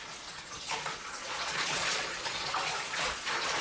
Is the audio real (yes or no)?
no